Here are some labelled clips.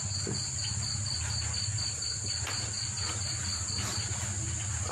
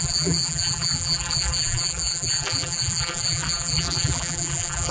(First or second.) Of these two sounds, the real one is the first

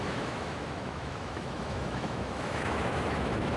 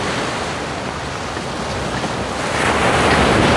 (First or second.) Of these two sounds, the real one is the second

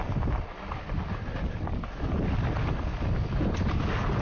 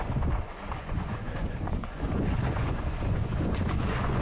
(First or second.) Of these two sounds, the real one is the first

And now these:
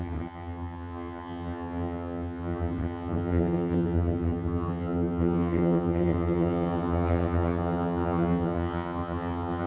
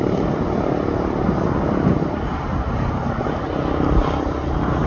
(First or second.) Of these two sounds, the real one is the second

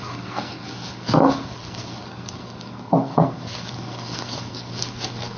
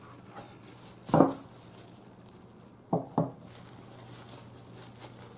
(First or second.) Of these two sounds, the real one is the second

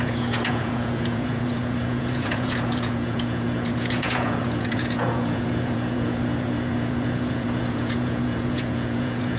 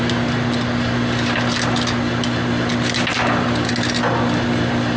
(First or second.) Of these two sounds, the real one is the second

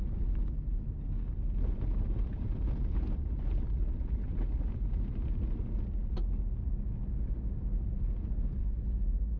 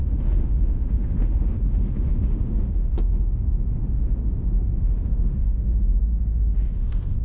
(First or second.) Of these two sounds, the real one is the first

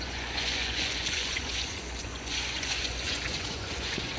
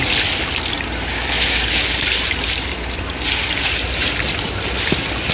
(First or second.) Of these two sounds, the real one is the second